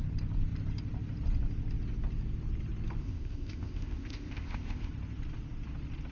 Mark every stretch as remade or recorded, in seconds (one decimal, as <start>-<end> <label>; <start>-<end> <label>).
0.0-3.0 recorded; 3.0-4.9 remade; 4.9-6.1 recorded